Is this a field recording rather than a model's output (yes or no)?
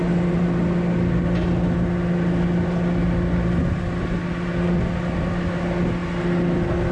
yes